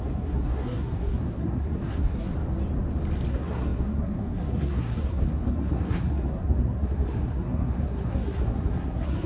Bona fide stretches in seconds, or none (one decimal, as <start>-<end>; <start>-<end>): 2.3-3.3